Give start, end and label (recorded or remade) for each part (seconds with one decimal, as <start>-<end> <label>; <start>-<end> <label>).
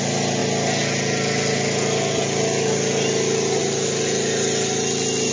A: 0.0-5.3 recorded